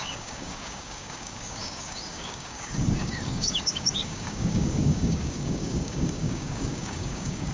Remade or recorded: remade